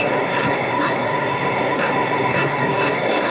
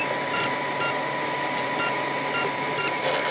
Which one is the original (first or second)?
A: second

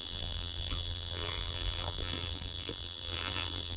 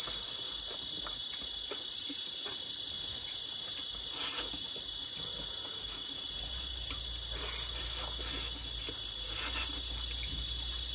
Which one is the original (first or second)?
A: second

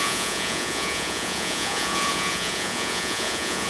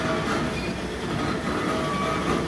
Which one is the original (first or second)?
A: second